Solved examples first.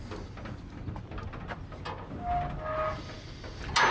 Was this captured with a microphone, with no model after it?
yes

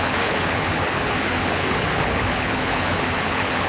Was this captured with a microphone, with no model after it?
no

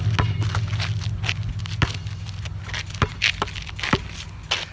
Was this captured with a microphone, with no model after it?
yes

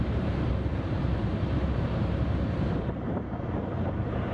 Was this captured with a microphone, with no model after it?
no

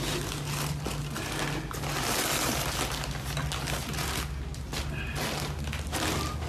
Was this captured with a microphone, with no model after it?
yes